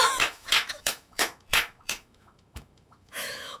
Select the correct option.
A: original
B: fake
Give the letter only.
B